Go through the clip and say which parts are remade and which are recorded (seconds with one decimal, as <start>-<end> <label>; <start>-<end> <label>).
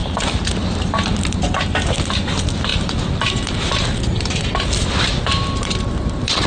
0.0-0.5 remade; 0.5-2.7 recorded; 2.7-3.7 remade; 3.7-5.6 recorded; 5.6-6.5 remade